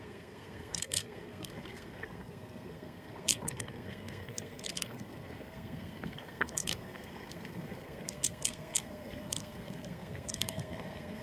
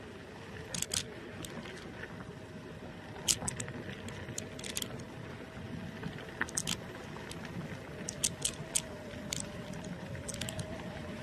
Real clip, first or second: second